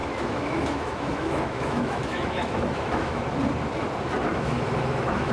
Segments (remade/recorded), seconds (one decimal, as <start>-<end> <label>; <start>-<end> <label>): 0.0-3.2 remade; 3.2-4.3 recorded; 4.3-5.3 remade